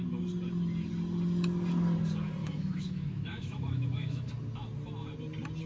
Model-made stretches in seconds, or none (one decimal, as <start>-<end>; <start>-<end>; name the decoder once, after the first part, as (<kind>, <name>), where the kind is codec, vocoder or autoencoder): 2.4-4.3 (autoencoder, DAC-VAE)